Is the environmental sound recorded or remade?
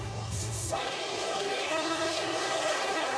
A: remade